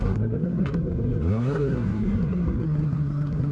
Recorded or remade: remade